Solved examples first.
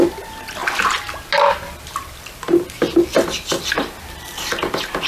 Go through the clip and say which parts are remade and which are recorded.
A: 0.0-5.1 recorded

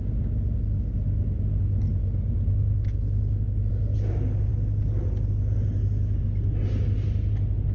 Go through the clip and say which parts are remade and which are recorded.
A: 0.0-7.7 recorded

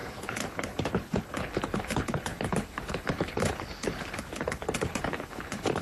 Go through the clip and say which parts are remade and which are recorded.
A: 0.0-5.8 remade

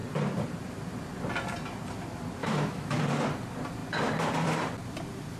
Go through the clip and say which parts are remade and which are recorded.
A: 0.0-2.4 recorded; 2.4-3.0 remade; 3.0-5.4 recorded

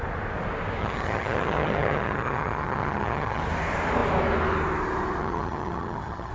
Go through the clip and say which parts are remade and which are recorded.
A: 0.0-0.8 recorded; 0.8-3.4 remade; 3.4-5.2 recorded; 5.2-6.3 remade

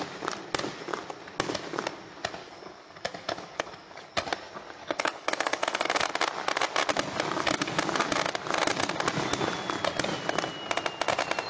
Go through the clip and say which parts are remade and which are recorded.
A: 0.0-2.4 recorded; 2.4-4.1 remade; 4.1-4.8 recorded; 4.8-6.1 remade; 6.1-11.5 recorded